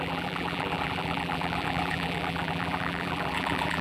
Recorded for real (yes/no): no